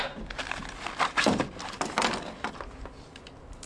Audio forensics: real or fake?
real